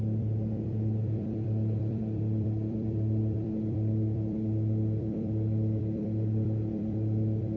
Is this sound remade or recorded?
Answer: remade